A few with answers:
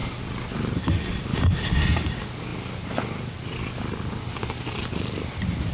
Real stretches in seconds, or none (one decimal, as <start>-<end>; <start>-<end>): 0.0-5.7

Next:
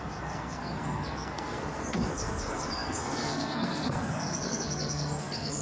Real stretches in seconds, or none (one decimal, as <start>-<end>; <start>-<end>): none

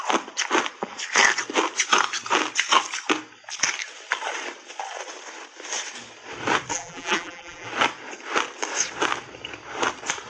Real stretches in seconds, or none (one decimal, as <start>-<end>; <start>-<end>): 0.0-6.7; 7.7-10.3

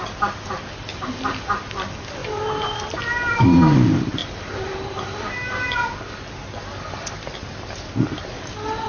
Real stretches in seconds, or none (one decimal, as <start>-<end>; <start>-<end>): 0.0-8.9

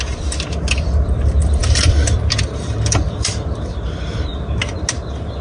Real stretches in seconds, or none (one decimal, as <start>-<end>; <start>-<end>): 4.3-5.4